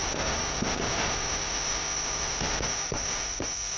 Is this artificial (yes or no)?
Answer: no